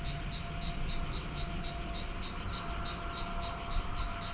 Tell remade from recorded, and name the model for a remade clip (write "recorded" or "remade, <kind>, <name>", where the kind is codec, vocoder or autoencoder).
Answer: recorded